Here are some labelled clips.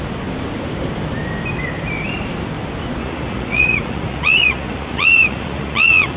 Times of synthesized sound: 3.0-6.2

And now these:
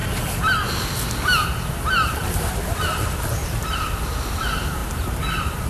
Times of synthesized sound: none

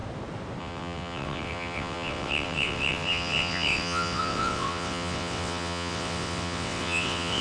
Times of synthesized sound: 0.6-7.4

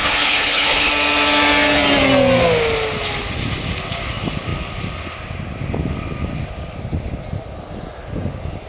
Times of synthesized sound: 0.0-0.9

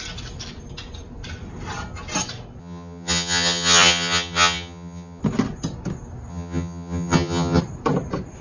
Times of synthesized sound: 2.6-5.2; 6.3-7.6